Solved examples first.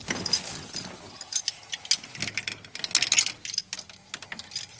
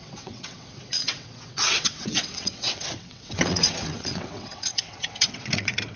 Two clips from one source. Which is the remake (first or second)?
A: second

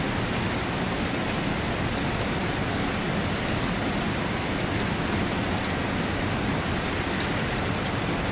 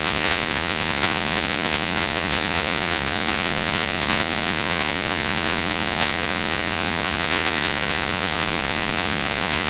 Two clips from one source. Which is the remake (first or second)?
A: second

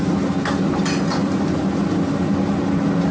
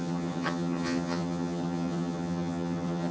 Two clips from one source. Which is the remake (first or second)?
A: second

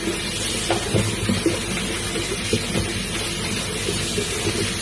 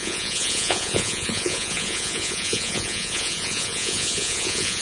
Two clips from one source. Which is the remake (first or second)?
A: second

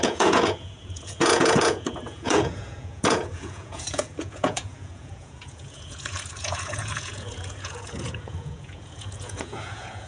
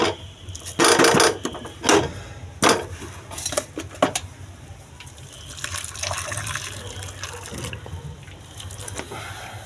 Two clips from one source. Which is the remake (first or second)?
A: first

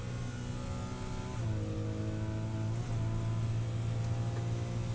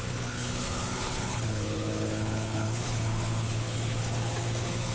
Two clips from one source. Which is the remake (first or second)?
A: second